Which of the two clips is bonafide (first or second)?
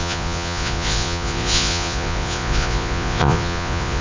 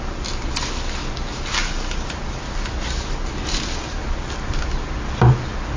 second